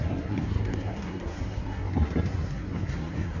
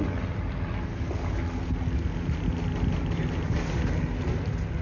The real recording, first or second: second